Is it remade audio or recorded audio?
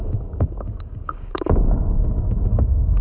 remade